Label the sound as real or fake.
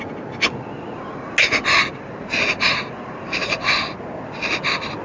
real